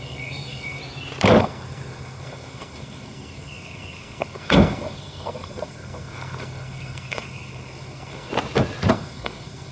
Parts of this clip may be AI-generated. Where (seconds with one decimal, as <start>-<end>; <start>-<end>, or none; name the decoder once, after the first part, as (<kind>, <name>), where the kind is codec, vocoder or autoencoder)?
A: 0.0-0.8 (codec, SNAC); 1.4-8.3; 8.9-9.7